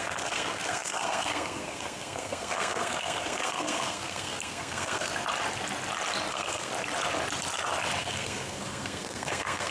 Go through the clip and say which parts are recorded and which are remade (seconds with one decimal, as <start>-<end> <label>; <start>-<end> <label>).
0.0-5.1 remade; 5.1-6.3 recorded; 6.3-6.7 remade; 6.7-8.0 recorded; 8.0-9.7 remade